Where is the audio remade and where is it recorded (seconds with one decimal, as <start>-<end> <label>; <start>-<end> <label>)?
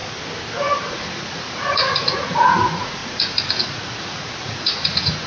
0.0-0.9 recorded; 0.9-3.0 remade; 3.0-3.7 recorded; 3.7-5.3 remade